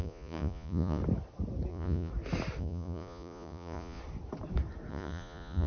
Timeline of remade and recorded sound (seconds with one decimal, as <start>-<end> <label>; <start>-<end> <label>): 0.0-1.0 remade; 1.0-1.7 recorded; 1.7-2.1 remade; 2.1-2.6 recorded; 2.6-4.0 remade; 4.0-4.9 recorded; 4.9-5.7 remade